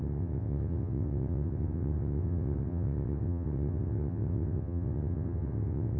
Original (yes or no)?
no